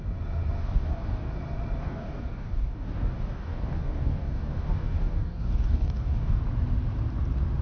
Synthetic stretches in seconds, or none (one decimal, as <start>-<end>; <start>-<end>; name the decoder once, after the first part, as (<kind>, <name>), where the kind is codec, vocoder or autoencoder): 0.6-1.3 (codec, DAC); 1.8-6.4